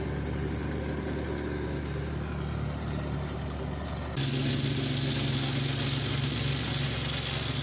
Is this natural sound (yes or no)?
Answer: yes